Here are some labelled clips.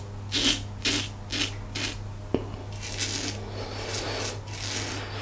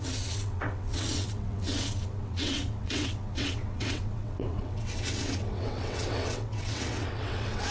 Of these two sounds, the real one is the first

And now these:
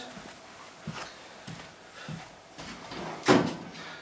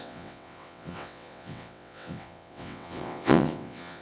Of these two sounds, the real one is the first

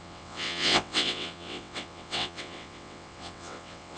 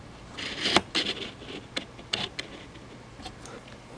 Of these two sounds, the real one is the second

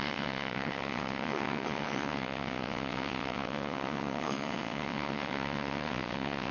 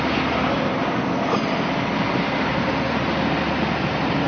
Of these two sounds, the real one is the second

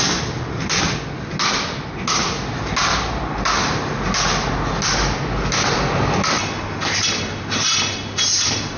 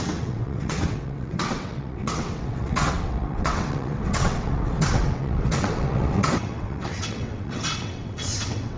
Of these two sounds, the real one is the first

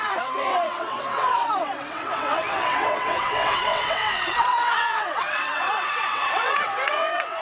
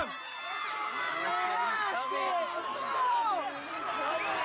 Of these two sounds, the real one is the second